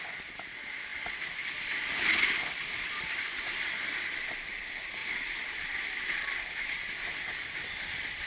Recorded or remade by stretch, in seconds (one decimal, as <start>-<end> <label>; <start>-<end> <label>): 0.0-5.0 remade; 5.0-6.2 recorded; 6.2-8.3 remade